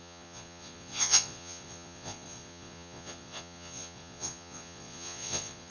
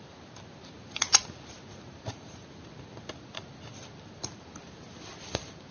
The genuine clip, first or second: second